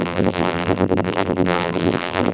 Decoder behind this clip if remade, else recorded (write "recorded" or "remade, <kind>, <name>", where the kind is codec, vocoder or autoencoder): remade, vocoder, BigVGAN v2